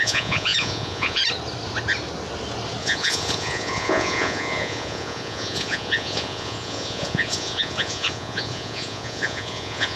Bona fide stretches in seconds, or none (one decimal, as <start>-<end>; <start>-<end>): 1.2-2.8